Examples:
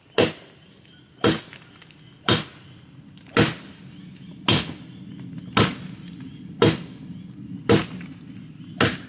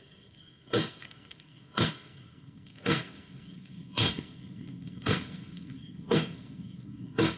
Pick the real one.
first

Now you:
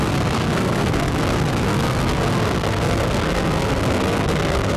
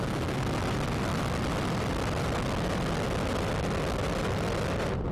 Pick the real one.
second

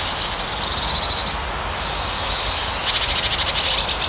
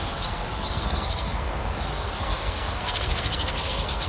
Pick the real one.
first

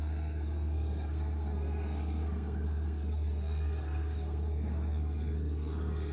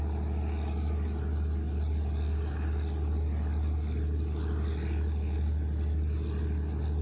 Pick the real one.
second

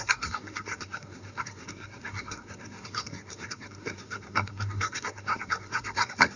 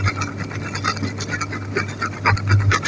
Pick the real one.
second